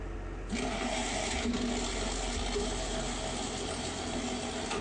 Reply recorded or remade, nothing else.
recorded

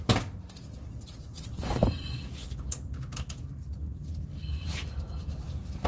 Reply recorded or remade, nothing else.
recorded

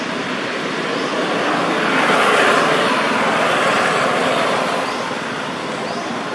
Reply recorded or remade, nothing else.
remade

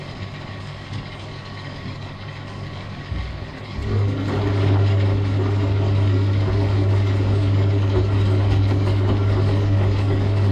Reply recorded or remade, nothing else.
remade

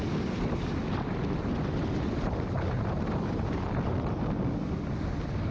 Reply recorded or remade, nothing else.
recorded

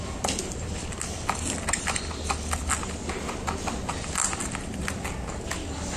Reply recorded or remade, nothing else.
recorded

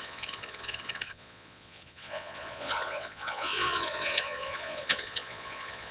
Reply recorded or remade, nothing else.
remade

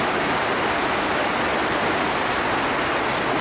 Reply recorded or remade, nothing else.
recorded